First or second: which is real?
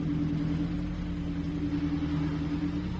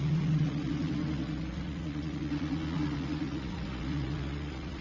first